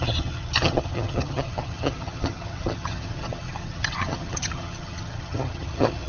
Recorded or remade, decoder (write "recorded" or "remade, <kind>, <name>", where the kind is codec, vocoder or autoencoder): remade, vocoder, HiFi-GAN